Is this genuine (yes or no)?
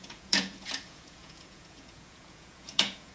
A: no